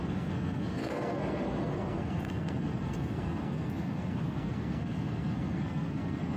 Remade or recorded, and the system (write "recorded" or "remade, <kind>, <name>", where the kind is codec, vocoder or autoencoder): remade, codec, SNAC